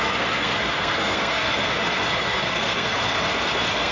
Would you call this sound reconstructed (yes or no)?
yes